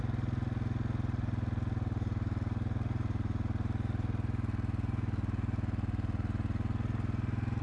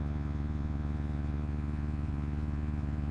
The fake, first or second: second